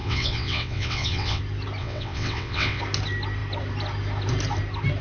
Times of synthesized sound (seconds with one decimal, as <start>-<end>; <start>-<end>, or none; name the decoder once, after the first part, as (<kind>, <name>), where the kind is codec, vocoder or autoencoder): 0.0-1.4 (vocoder, WaveNeXt); 1.8-2.8